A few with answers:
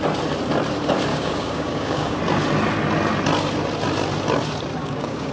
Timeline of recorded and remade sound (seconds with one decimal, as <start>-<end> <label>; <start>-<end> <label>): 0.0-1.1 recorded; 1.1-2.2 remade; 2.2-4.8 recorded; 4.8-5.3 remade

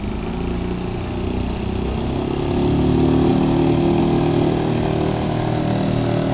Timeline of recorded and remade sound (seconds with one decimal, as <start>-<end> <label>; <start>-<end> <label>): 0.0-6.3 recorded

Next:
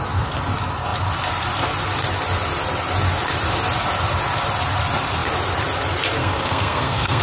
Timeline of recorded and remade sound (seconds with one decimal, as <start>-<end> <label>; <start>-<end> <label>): 0.0-6.2 recorded; 6.2-7.2 remade

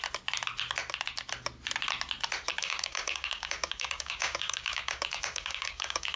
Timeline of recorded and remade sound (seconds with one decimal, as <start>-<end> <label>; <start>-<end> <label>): 0.0-2.5 recorded; 2.5-6.2 remade

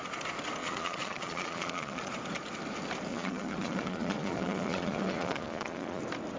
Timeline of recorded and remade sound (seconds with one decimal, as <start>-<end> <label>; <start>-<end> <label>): 0.0-0.6 recorded; 0.6-2.1 remade; 2.1-3.1 recorded; 3.1-6.0 remade; 6.0-6.4 recorded